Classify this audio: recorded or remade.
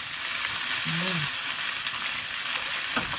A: recorded